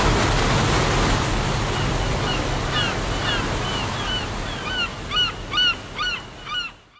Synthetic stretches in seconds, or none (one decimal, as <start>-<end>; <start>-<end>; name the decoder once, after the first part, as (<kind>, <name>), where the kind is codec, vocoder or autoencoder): none